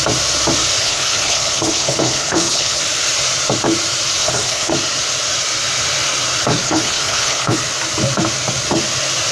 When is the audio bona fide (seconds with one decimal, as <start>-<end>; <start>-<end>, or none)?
0.0-0.8; 2.8-4.2; 4.7-6.6; 7.6-9.3